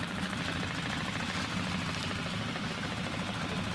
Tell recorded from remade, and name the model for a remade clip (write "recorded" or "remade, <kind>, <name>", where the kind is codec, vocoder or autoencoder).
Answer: recorded